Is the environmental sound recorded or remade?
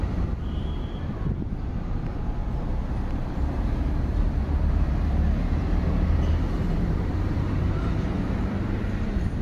remade